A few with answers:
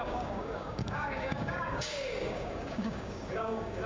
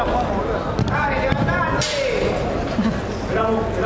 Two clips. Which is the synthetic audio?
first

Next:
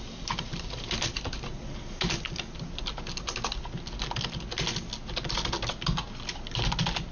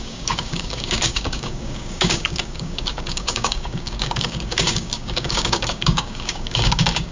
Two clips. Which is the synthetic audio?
second